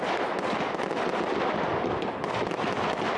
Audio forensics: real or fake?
real